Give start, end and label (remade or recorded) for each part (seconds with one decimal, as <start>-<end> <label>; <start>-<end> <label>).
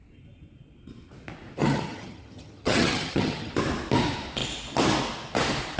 0.0-1.6 recorded; 1.6-3.5 remade; 3.5-5.8 recorded